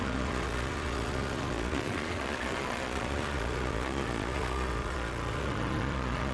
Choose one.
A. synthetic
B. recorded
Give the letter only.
A